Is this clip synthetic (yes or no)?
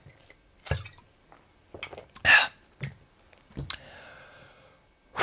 no